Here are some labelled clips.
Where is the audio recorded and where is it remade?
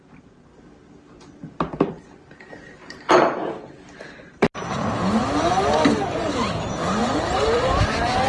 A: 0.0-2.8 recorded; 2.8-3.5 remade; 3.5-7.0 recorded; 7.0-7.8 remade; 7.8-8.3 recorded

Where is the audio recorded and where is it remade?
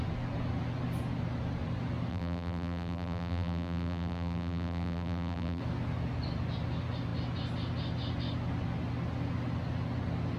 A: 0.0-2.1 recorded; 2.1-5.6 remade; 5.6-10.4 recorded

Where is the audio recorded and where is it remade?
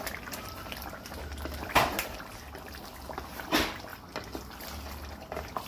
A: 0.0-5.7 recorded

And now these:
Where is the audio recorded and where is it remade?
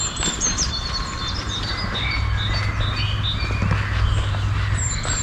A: 0.0-1.7 remade; 1.7-4.8 recorded; 4.8-5.2 remade